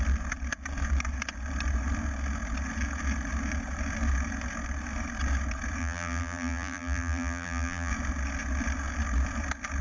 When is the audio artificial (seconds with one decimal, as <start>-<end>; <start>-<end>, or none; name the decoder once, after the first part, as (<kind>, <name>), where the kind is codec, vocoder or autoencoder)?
5.8-7.9 (vocoder, BigVGAN v2)